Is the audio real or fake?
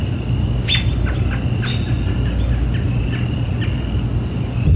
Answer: real